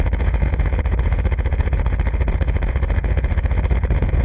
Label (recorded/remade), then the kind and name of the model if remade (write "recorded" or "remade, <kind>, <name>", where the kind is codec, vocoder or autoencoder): remade, vocoder, Vocos